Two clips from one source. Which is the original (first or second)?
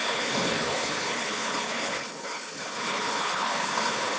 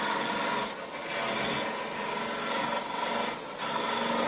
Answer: second